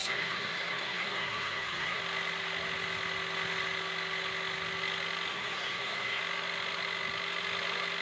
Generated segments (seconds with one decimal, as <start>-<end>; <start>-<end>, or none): 0.0-2.0; 5.3-6.2